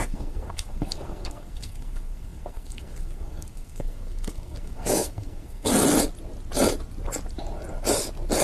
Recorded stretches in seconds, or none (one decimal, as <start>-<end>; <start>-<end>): 5.7-8.4